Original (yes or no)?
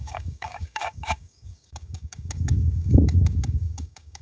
no